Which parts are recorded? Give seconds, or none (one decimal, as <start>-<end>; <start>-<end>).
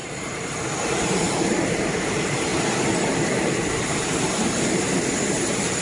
2.5-3.1